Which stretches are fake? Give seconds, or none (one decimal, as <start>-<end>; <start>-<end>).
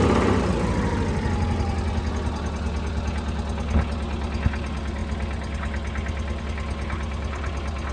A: none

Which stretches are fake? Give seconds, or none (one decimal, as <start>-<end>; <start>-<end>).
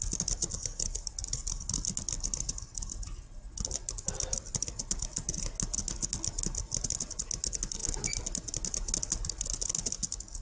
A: none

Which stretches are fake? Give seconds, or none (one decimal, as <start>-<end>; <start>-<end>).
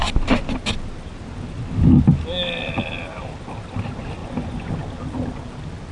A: 4.2-4.7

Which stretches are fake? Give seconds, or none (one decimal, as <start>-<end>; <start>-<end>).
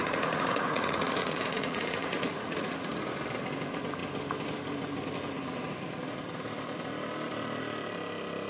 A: 0.0-2.9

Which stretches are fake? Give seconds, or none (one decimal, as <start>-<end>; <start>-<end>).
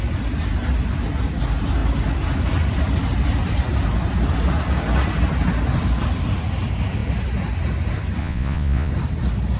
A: 8.2-8.9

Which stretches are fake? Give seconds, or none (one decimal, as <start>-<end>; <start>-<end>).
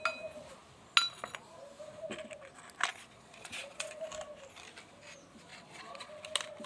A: 2.9-4.0; 5.5-6.1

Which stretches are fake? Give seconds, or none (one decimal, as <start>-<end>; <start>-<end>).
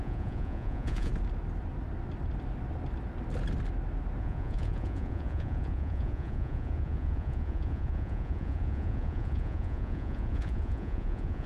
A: 0.0-1.1; 4.2-11.5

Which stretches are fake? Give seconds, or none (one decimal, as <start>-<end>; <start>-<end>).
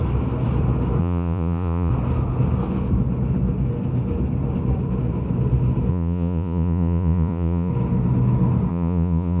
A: 1.0-1.9; 5.9-7.7; 8.7-9.4